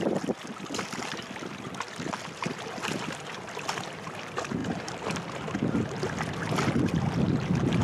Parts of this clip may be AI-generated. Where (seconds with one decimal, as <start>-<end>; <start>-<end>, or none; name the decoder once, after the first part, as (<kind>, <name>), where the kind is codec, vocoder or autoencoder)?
none